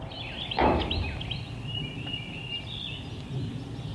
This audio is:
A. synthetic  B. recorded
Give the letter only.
B